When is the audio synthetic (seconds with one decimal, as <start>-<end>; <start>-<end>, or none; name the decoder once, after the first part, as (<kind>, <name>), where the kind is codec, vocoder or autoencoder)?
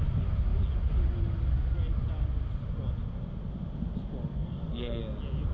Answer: 4.3-5.0 (codec, SNAC)